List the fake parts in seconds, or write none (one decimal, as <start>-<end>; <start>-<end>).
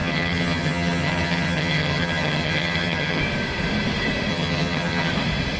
0.0-3.2; 4.3-5.1